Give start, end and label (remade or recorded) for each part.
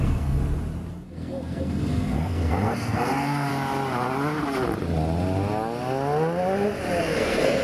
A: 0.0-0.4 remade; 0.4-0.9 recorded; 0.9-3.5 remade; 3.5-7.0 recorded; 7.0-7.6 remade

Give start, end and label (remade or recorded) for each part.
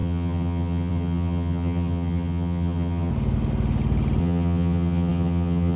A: 0.0-3.1 remade; 3.1-4.2 recorded; 4.2-5.8 remade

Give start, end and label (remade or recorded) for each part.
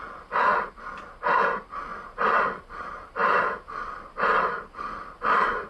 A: 0.0-5.7 recorded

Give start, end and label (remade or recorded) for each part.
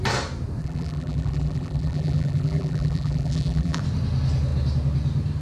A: 0.0-0.6 recorded; 0.6-3.8 remade; 3.8-5.4 recorded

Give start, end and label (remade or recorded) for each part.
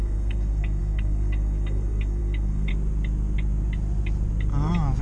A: 0.0-2.7 remade; 2.7-5.0 recorded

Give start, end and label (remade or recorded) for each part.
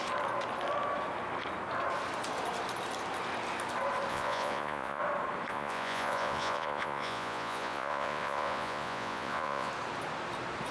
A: 0.0-4.1 recorded; 4.1-5.0 remade; 5.0-5.5 recorded; 5.5-9.7 remade; 9.7-10.7 recorded